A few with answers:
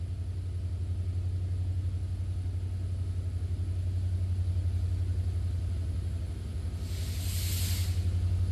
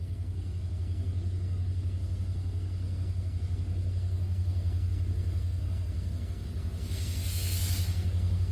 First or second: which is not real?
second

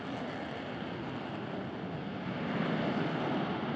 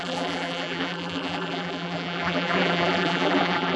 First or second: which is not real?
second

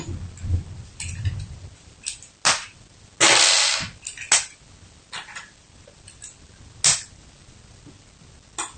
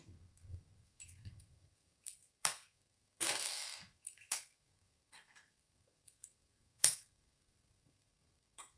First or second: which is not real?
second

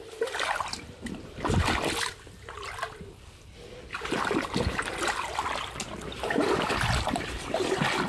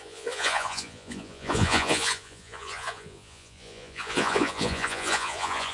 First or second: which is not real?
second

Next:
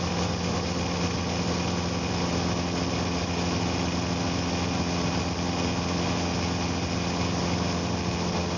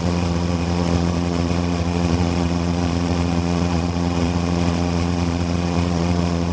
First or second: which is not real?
second